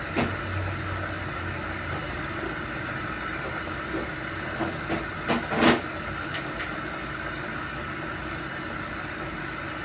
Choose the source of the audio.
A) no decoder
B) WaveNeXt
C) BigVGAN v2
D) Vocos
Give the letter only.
A